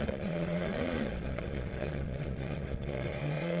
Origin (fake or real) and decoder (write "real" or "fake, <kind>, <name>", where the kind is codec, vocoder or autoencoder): fake, vocoder, Vocos